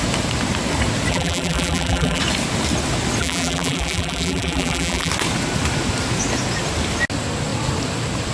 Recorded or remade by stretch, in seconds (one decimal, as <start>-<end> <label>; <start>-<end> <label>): 0.0-1.1 recorded; 1.1-2.2 remade; 2.2-3.2 recorded; 3.2-5.1 remade; 5.1-8.3 recorded